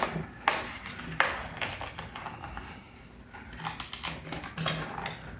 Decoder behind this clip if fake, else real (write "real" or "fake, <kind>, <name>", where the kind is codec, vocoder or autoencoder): real